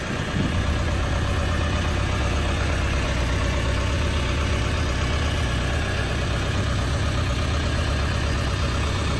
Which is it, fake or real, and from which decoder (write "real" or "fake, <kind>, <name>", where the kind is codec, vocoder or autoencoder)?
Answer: fake, vocoder, Vocos